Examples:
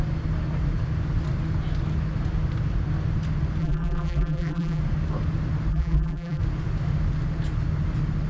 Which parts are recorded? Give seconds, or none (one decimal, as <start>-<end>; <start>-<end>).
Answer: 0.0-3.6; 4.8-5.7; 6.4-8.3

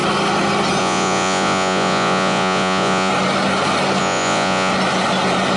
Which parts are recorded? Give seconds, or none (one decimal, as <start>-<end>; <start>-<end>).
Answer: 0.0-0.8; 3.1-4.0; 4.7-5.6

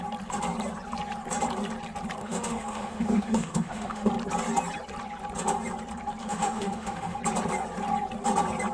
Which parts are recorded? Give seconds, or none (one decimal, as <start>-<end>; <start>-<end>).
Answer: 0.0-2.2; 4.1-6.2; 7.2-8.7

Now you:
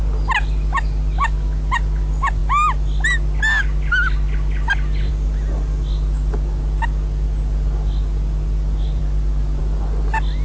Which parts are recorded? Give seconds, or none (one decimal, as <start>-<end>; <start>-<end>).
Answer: 0.0-10.4

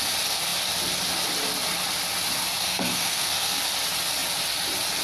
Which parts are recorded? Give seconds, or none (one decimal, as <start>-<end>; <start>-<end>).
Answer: 0.0-2.6; 3.6-5.0

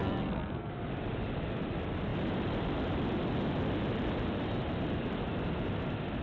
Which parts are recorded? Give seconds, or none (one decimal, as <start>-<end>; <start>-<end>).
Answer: 0.7-6.2